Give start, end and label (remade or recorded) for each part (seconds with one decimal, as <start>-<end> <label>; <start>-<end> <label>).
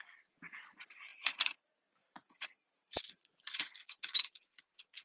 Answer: 0.0-1.1 recorded; 1.1-1.6 remade; 1.6-2.0 recorded; 2.0-5.0 remade